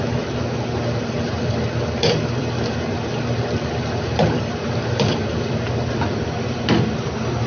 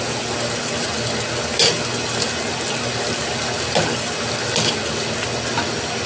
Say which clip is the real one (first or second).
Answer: second